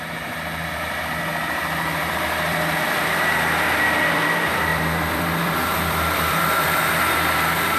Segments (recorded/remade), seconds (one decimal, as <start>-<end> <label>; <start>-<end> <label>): 0.0-7.8 remade